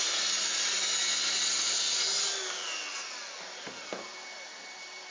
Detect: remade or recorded recorded